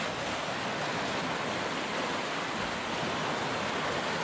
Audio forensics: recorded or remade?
recorded